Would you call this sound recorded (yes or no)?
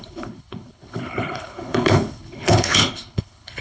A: no